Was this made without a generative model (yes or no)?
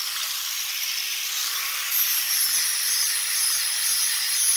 no